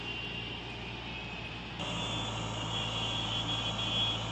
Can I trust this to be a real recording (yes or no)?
yes